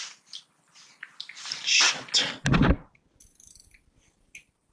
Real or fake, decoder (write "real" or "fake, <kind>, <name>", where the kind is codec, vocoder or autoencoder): real